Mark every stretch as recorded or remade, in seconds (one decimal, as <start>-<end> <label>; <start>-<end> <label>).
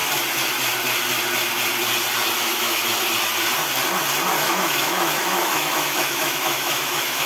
0.0-2.4 recorded; 2.4-2.8 remade; 2.8-4.4 recorded; 4.4-7.3 remade